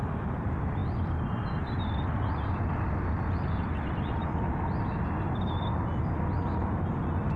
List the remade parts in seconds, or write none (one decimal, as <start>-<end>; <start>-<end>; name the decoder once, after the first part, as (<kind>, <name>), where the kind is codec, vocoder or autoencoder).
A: none